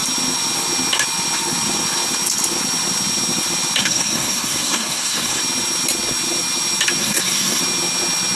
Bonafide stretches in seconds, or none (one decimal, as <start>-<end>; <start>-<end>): 0.0-3.8; 5.4-7.0; 7.6-8.4